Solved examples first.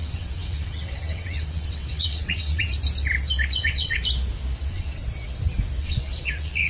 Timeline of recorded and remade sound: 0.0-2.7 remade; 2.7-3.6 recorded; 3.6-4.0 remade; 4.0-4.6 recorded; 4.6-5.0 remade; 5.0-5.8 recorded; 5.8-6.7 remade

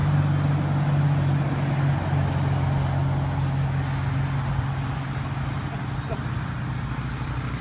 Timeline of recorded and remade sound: 0.0-7.6 recorded

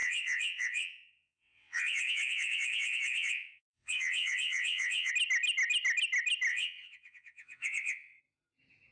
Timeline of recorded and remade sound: 0.0-5.1 remade; 5.1-6.5 recorded; 6.5-8.2 remade; 8.2-8.9 recorded

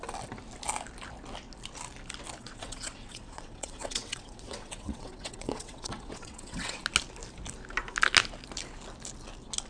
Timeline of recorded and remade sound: 0.0-2.4 recorded; 2.4-6.8 remade; 6.8-9.7 recorded

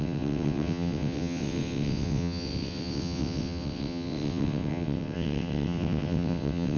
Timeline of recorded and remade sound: 0.0-6.8 remade